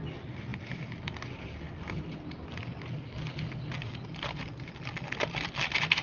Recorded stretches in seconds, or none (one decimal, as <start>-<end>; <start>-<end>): 0.0-6.0